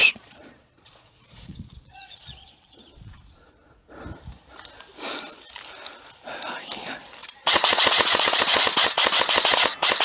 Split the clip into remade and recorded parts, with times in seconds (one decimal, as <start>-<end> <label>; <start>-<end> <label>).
0.0-3.9 remade; 3.9-7.2 recorded; 7.2-8.9 remade; 8.9-10.0 recorded